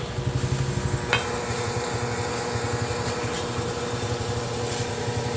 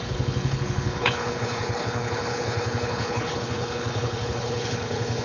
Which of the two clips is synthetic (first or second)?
second